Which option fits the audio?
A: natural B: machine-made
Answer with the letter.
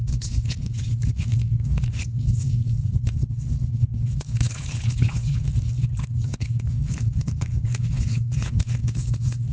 B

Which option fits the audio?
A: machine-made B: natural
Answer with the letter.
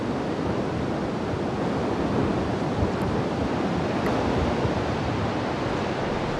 B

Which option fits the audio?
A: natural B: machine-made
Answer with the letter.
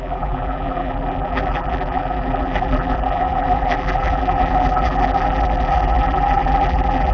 B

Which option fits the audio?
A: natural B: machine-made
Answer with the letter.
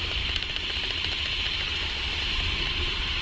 A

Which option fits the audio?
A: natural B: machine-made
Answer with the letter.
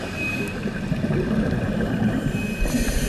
A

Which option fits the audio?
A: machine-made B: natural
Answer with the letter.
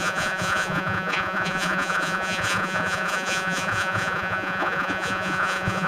A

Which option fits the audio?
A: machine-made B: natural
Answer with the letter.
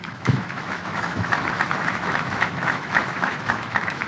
A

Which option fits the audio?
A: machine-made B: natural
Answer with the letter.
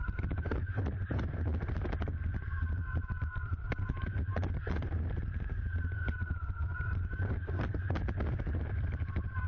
A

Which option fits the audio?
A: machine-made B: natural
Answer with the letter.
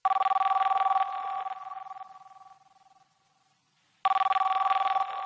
B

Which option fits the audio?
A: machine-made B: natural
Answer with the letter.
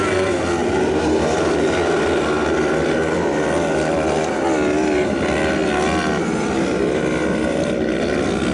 B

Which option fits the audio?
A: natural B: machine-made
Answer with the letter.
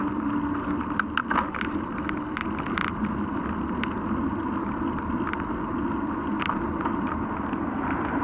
A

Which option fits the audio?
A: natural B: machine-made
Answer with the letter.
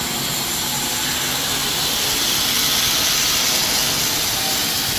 A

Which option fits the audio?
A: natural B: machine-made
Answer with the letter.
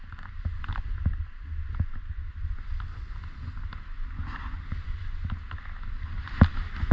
A